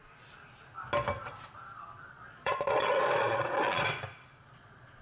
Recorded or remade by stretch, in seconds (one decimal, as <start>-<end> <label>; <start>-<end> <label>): 0.0-2.1 recorded; 2.1-3.8 remade; 3.8-4.4 recorded; 4.4-5.0 remade